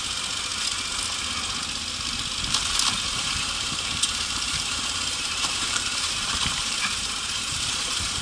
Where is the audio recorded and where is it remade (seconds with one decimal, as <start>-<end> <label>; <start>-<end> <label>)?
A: 0.0-3.1 recorded; 3.1-8.2 remade